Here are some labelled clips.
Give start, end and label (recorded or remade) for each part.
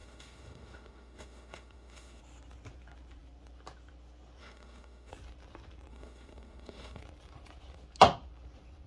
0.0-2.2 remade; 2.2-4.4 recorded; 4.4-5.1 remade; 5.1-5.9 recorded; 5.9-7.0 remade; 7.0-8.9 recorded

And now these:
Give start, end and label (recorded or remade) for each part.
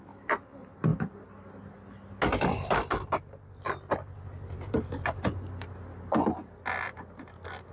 0.0-7.7 recorded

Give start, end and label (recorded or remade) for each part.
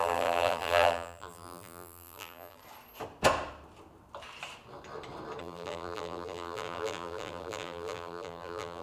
0.0-2.6 remade; 2.6-5.4 recorded; 5.4-8.8 remade